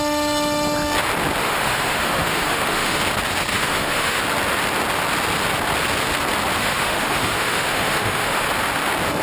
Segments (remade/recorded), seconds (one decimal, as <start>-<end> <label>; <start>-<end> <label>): 0.0-1.4 recorded; 1.4-3.0 remade; 3.0-3.5 recorded; 3.5-4.2 remade; 4.2-6.6 recorded; 6.6-8.5 remade; 8.5-9.2 recorded